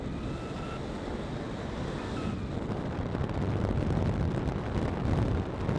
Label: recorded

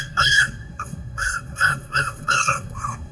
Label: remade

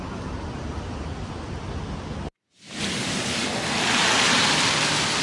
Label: recorded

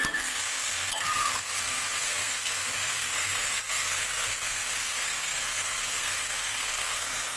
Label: remade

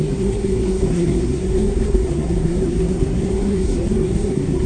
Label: remade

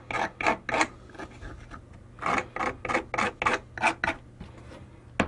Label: recorded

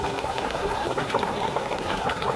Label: remade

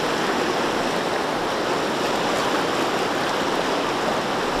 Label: recorded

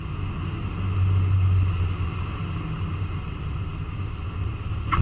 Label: recorded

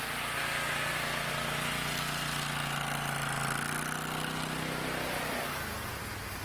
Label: recorded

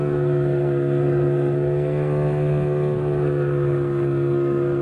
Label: remade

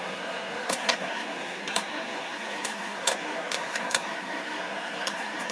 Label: remade